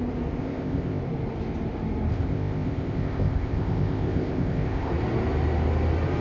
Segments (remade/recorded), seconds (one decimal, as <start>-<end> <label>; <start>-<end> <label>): 0.0-0.4 recorded; 0.4-1.0 remade; 1.0-2.1 recorded; 2.1-4.9 remade; 4.9-6.2 recorded